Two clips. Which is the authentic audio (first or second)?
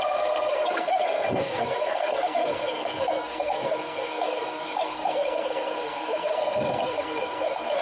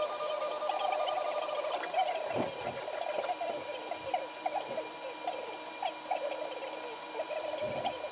second